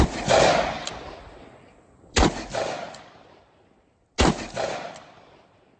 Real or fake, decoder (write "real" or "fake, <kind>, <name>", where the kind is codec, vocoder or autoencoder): real